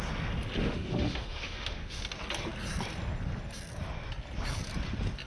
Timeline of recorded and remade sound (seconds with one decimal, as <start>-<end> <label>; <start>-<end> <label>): 0.0-0.6 recorded; 0.6-2.0 remade; 2.0-5.3 recorded